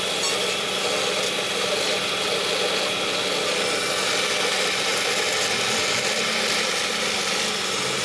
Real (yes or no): yes